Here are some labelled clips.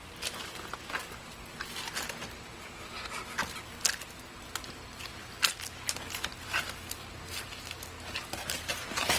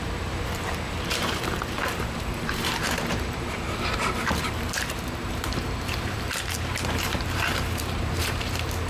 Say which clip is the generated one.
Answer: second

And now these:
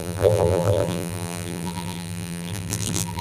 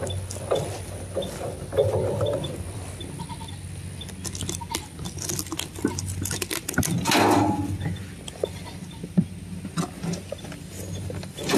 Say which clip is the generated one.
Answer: first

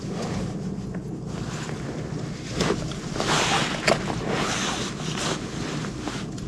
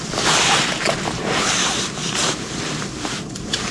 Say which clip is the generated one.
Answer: second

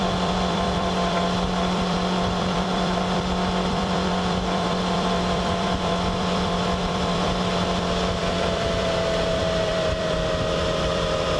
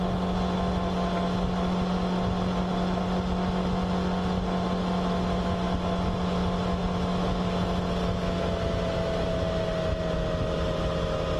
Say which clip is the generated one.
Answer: first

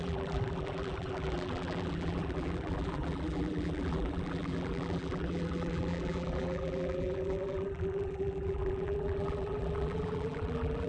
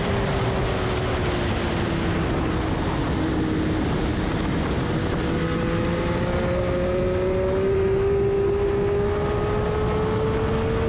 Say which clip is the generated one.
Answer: first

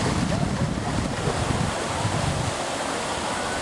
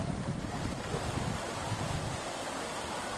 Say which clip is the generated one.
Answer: second